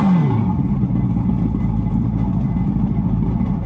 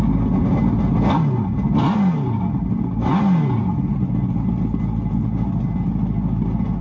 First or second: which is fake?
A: first